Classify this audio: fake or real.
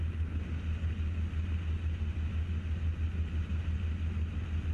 real